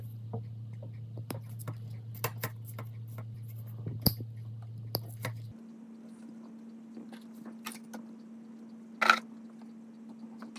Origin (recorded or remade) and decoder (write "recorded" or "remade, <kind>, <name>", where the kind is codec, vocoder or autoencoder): recorded